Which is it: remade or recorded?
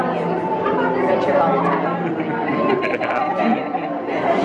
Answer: recorded